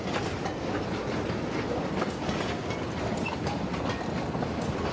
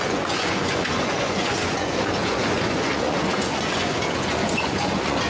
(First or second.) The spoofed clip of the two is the second